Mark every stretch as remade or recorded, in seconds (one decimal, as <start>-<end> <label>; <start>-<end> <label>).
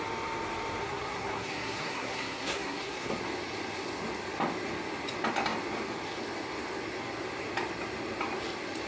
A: 0.0-0.8 recorded; 0.8-3.2 remade; 3.2-8.9 recorded